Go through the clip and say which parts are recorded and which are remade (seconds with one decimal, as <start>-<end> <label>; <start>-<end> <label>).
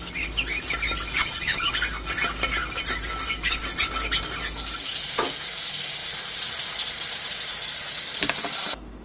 0.0-1.2 recorded; 1.2-1.7 remade; 1.7-9.0 recorded